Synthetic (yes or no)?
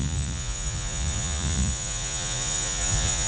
yes